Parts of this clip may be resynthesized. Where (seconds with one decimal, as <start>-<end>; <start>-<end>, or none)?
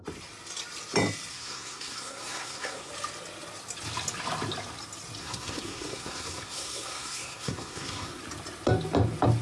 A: 1.3-2.9; 5.2-8.2